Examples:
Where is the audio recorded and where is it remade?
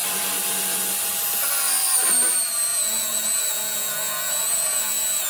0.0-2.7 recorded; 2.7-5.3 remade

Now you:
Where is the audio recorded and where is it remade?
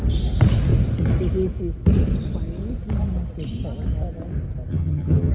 0.0-4.7 recorded; 4.7-5.3 remade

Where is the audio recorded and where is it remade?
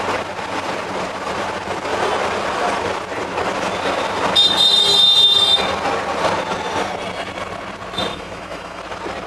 0.0-8.1 recorded; 8.1-8.8 remade; 8.8-9.3 recorded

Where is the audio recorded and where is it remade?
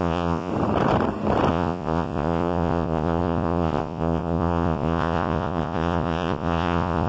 0.0-0.5 remade; 0.5-1.5 recorded; 1.5-7.1 remade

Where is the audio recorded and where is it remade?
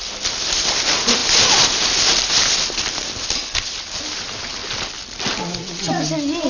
0.0-6.5 recorded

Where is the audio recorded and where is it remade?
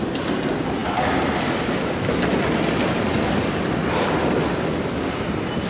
0.0-5.7 recorded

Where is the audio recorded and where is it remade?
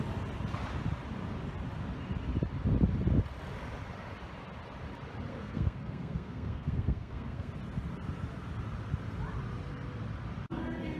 0.0-5.3 recorded; 5.3-7.5 remade; 7.5-11.0 recorded